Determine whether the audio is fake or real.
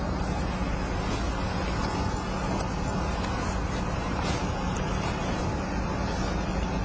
real